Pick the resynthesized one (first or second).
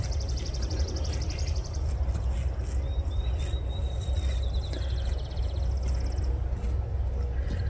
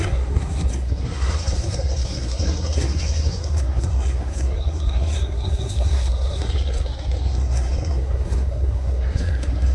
second